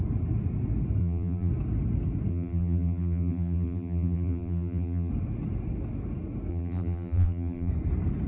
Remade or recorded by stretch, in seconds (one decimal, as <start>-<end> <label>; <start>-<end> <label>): 0.0-1.0 recorded; 1.0-1.5 remade; 1.5-2.3 recorded; 2.3-5.1 remade; 5.1-6.5 recorded; 6.5-7.7 remade; 7.7-8.3 recorded